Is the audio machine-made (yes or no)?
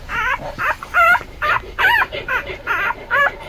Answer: no